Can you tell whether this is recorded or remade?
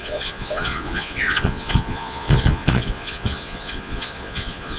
remade